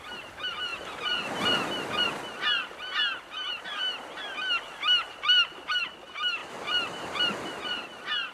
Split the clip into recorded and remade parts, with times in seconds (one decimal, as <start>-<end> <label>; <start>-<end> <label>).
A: 0.0-0.7 remade; 0.7-5.7 recorded; 5.7-6.4 remade; 6.4-7.6 recorded; 7.6-8.3 remade